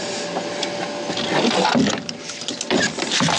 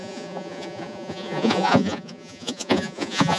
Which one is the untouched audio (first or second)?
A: first